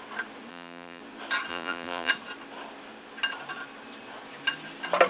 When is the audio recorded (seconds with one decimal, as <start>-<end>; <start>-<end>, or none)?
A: 0.0-0.5; 1.0-1.5; 2.1-5.1